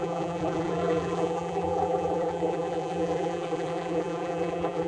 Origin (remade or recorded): remade